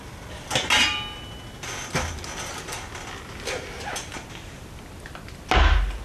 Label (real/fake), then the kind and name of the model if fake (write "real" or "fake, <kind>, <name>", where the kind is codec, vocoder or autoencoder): real